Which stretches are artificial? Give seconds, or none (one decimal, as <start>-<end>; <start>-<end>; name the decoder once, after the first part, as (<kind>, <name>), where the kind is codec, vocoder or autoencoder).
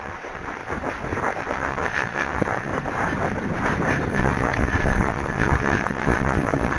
0.0-0.6 (vocoder, WaveNeXt); 1.4-2.7; 4.1-6.8